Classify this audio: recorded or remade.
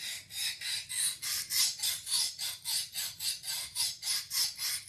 recorded